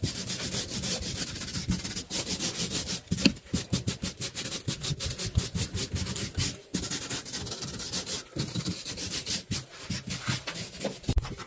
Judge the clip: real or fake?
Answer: real